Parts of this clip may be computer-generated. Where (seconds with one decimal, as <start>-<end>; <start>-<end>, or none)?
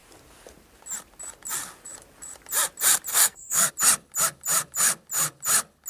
3.1-3.7